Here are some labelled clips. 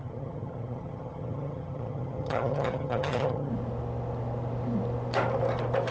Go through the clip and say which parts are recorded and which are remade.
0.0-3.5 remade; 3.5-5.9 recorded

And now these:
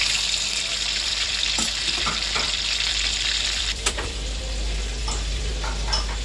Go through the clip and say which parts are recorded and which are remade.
0.0-0.7 recorded; 0.7-4.4 remade; 4.4-5.0 recorded; 5.0-5.5 remade; 5.5-6.2 recorded

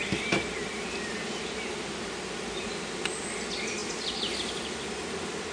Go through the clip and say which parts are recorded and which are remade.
0.0-5.5 recorded

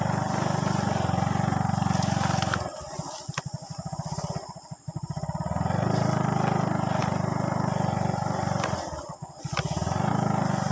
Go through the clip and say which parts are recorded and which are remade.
0.0-10.7 recorded

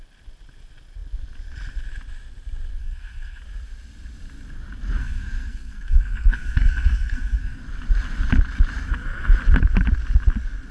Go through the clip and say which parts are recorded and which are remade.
0.0-2.8 recorded; 2.8-3.4 remade; 3.4-5.0 recorded; 5.0-7.6 remade; 7.6-10.7 recorded

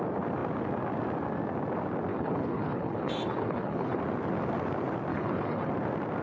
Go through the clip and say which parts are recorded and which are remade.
0.0-2.1 recorded; 2.1-4.0 remade; 4.0-5.1 recorded; 5.1-5.7 remade; 5.7-6.2 recorded

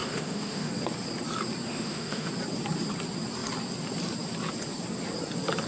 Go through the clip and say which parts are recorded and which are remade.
0.0-0.7 remade; 0.7-1.7 recorded; 1.7-2.3 remade; 2.3-5.7 recorded

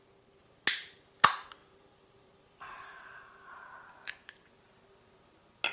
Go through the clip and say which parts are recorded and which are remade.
0.0-1.6 recorded; 1.6-3.9 remade; 3.9-5.7 recorded